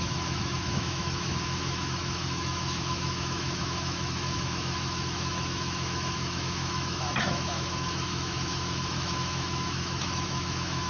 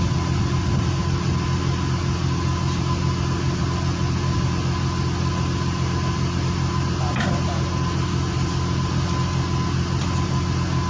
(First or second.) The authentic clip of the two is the second